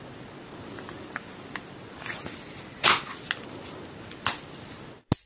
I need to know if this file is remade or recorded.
recorded